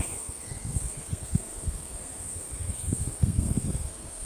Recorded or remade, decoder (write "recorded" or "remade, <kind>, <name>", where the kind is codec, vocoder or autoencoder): remade, codec, SNAC